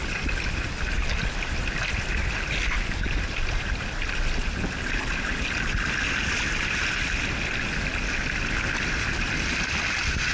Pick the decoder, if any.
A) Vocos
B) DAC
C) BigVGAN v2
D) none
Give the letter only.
D